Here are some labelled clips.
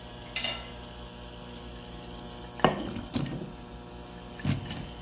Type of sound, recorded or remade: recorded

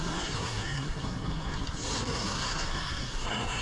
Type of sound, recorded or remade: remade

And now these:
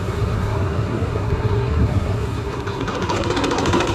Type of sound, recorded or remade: remade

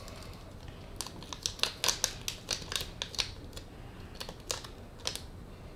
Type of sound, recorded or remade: recorded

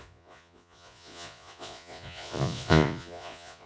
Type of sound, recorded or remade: remade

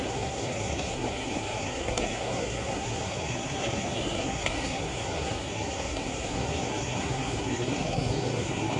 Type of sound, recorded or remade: remade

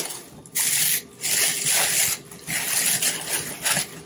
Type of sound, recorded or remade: recorded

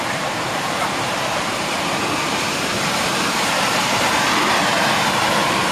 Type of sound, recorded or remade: remade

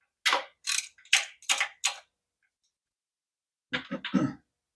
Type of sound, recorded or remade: recorded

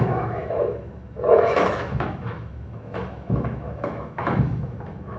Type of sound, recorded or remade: remade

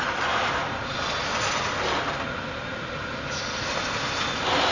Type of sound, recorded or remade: recorded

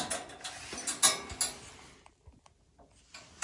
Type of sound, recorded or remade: recorded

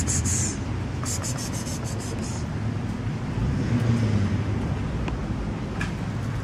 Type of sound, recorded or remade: recorded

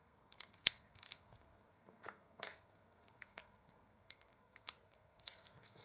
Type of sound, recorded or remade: remade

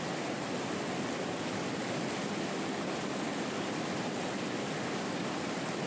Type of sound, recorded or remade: recorded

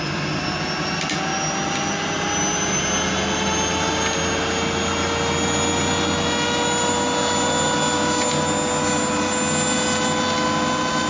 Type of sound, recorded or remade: recorded